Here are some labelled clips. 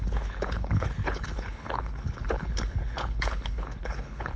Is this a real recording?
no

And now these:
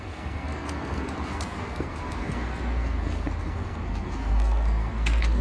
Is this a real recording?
no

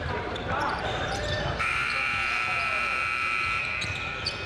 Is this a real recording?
no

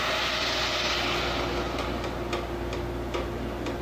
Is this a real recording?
yes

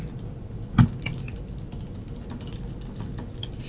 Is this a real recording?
yes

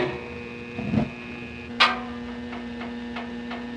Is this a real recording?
yes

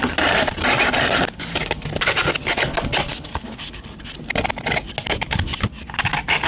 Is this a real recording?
yes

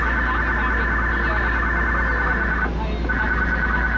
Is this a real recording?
yes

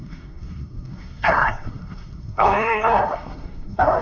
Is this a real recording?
no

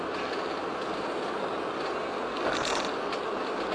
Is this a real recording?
yes